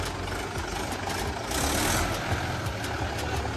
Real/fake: real